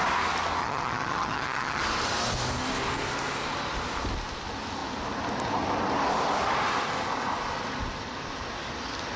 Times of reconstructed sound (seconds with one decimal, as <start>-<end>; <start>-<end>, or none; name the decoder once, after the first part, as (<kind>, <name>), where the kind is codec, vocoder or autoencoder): 0.6-1.8 (vocoder, HiFi-GAN)